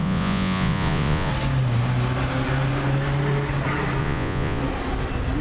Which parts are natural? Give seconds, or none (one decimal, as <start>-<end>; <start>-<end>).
1.3-4.0; 4.6-5.4